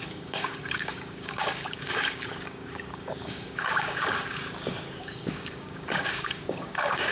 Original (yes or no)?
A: no